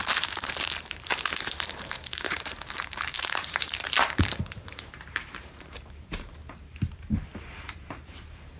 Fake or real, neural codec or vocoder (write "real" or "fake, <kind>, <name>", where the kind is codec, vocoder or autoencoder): fake, vocoder, BigVGAN v2